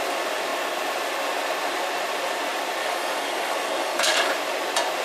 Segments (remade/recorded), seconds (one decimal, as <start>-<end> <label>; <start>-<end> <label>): 0.0-2.8 recorded; 2.8-4.3 remade; 4.3-5.0 recorded